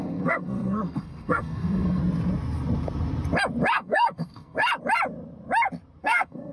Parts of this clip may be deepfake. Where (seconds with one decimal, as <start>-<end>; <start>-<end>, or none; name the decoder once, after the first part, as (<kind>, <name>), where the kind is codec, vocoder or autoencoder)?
0.0-2.0 (codec, SNAC); 3.7-4.6; 6.0-6.5